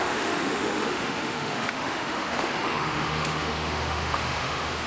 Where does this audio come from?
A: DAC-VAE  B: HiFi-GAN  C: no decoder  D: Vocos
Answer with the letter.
A